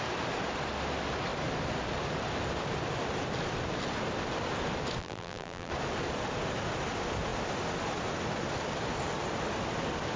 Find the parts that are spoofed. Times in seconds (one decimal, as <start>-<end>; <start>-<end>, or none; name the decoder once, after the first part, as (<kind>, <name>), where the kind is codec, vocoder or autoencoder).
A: 5.0-5.7 (vocoder, BigVGAN v2)